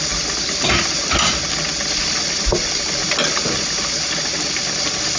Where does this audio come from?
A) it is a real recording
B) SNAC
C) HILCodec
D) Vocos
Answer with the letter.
A